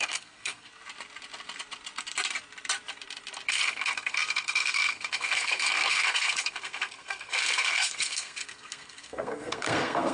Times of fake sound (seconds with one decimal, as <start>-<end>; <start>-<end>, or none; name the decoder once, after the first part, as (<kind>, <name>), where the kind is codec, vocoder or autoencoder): 0.0-0.7 (codec, SNAC); 3.5-10.1